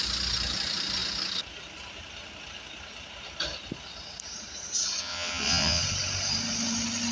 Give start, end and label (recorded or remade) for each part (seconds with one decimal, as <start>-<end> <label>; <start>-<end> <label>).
0.0-5.0 recorded; 5.0-5.8 remade; 5.8-7.1 recorded